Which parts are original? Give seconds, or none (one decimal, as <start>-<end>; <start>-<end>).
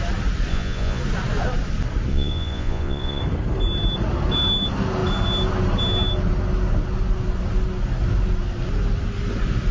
0.0-0.5; 1.0-2.1; 3.2-9.7